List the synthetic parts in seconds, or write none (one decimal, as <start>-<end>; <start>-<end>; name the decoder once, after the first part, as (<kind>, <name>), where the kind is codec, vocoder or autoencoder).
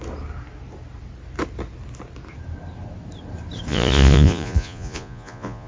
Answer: 3.7-5.7 (vocoder, Vocos)